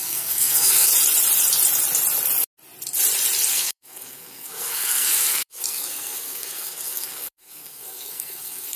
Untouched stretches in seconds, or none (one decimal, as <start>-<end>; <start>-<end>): 0.9-3.5